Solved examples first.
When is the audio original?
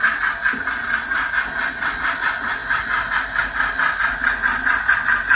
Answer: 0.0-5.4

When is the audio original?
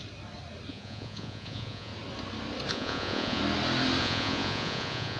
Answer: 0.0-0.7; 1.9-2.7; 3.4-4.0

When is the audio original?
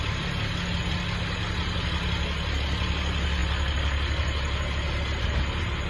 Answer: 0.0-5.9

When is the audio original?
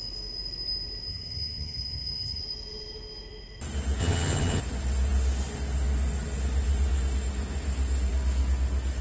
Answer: 0.0-1.1; 2.4-4.0; 4.6-9.0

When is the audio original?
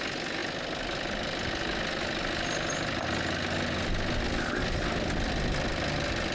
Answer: 0.0-6.3